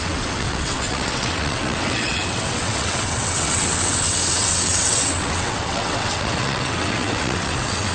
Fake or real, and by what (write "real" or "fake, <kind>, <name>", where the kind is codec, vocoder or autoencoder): fake, vocoder, WaveNeXt